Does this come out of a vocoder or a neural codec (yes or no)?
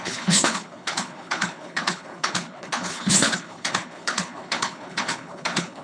yes